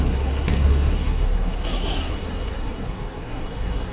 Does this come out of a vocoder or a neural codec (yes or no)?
yes